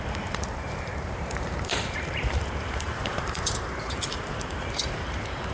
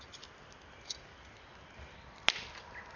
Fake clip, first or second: first